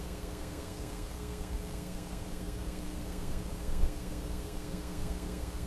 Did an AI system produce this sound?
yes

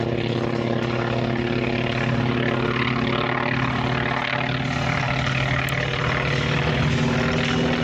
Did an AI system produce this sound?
no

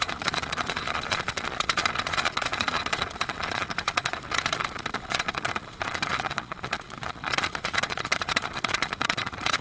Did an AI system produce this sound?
yes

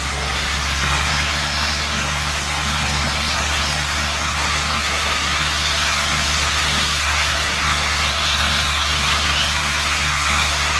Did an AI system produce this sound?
yes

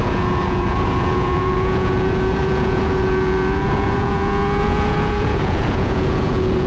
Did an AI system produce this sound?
yes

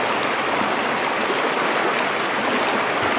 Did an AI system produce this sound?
no